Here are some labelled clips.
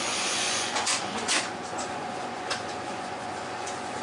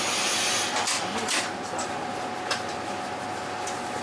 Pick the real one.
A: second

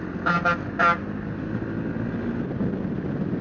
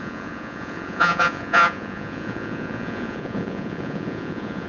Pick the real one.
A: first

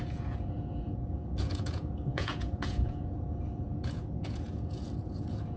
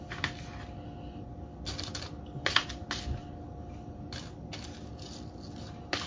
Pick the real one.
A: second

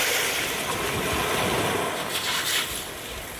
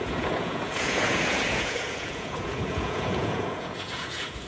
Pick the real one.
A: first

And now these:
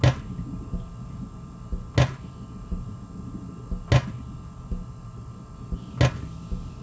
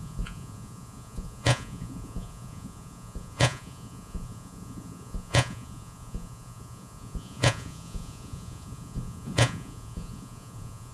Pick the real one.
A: first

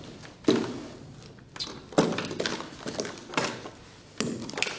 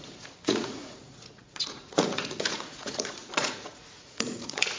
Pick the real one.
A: first